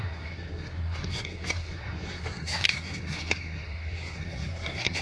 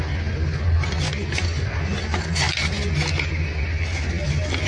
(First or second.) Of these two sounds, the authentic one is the second